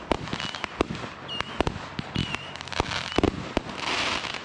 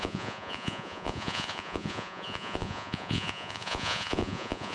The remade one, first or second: second